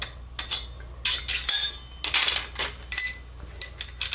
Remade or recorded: recorded